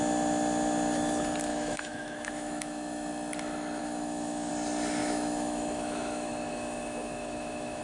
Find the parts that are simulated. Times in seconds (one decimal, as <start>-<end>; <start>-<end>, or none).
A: 1.5-3.1; 3.8-4.5; 5.0-7.8